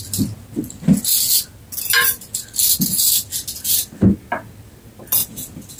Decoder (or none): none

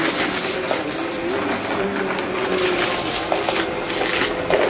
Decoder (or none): none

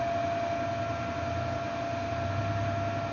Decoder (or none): none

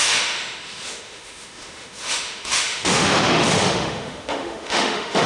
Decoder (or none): autoencoder, DAC-VAE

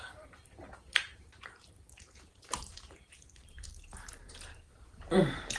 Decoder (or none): vocoder, BigVGAN v2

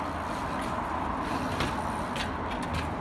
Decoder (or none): none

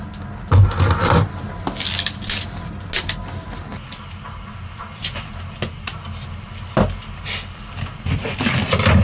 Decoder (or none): none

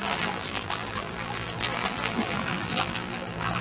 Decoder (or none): vocoder, BigVGAN v2